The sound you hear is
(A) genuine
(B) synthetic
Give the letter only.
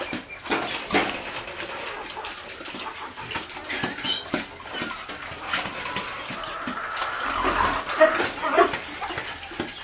A